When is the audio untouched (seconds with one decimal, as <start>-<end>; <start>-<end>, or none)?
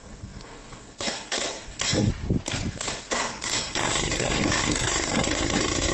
2.1-2.7